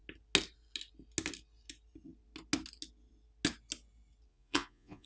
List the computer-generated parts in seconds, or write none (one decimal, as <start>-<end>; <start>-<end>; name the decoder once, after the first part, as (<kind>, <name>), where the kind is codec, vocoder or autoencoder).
4.3-5.1 (vocoder, Vocos)